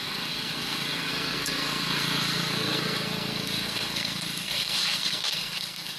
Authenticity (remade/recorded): remade